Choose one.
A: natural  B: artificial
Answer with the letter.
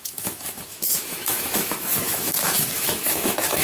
B